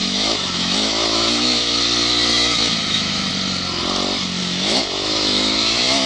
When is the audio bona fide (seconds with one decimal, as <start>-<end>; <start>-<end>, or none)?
1.8-2.3; 3.3-4.4